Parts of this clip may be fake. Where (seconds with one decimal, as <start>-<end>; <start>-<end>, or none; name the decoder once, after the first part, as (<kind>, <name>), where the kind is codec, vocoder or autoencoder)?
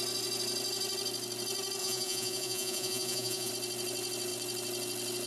1.8-3.5 (vocoder, Vocos)